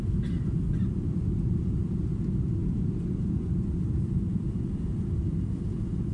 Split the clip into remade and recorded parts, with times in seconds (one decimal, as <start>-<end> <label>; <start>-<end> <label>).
0.0-6.1 recorded

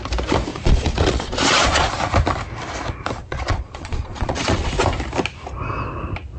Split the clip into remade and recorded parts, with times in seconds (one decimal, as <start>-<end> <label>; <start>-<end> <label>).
0.0-0.5 recorded; 0.5-1.9 remade; 1.9-3.2 recorded; 3.2-4.7 remade; 4.7-6.4 recorded